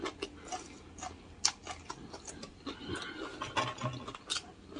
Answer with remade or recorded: recorded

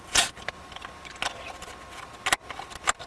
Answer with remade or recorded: recorded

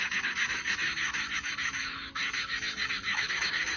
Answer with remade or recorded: remade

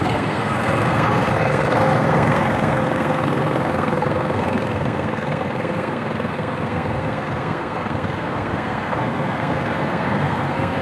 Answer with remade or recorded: remade